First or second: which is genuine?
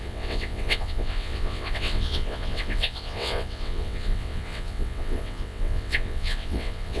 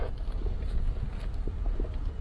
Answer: second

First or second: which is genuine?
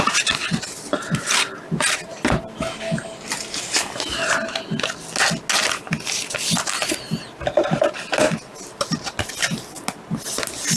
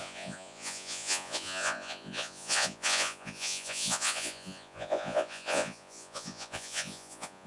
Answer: first